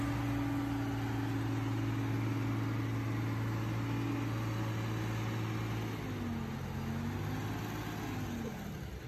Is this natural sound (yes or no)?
yes